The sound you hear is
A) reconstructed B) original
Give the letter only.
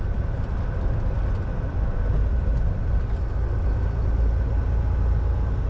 B